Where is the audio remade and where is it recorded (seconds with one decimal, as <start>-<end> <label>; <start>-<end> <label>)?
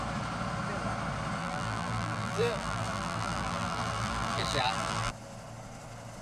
0.0-1.4 recorded; 1.4-5.1 remade; 5.1-6.2 recorded